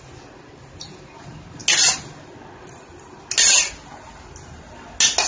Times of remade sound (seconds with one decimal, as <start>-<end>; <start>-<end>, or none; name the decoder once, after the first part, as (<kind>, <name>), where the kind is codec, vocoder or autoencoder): none